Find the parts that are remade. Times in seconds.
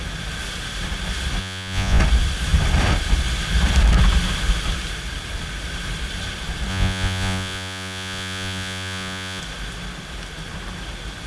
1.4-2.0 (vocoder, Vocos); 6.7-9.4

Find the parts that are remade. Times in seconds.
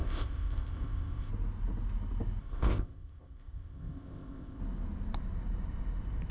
0.0-1.3 (codec, ZipCodec); 2.4-4.6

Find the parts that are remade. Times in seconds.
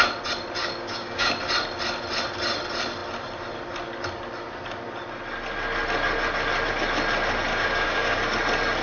0.6-1.3 (codec, DAC); 7.5-8.2